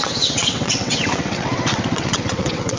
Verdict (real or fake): fake